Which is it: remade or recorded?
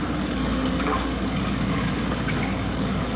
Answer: remade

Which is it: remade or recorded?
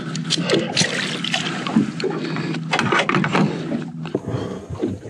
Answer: recorded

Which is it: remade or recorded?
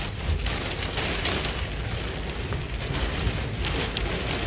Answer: recorded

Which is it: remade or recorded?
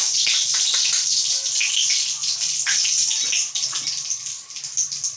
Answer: recorded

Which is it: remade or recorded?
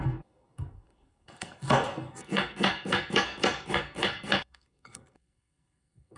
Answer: remade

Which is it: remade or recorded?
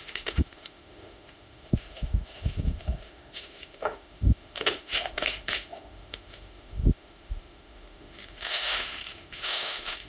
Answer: remade